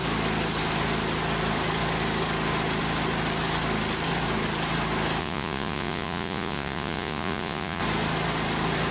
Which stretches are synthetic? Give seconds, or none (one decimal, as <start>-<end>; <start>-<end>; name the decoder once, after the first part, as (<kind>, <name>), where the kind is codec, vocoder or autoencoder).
5.2-7.8 (vocoder, Vocos)